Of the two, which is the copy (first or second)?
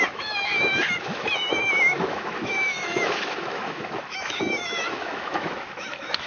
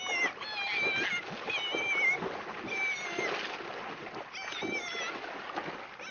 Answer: first